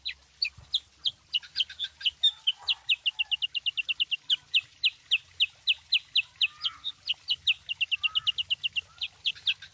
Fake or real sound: real